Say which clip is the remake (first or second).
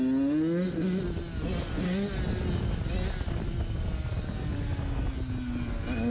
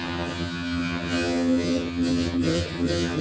second